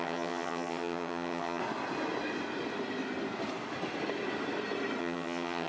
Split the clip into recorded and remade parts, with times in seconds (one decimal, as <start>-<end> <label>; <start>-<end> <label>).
0.0-1.6 remade; 1.6-5.0 recorded; 5.0-5.7 remade